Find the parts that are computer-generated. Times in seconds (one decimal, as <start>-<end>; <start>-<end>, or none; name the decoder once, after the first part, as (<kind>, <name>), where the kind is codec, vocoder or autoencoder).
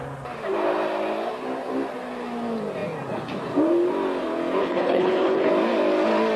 4.6-5.5 (codec, HILCodec)